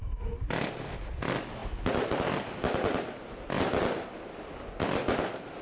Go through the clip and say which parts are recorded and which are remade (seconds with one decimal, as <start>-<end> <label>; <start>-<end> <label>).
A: 0.0-1.1 remade; 1.1-5.6 recorded